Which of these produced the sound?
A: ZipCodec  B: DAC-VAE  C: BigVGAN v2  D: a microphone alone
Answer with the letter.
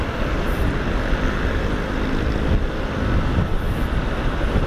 D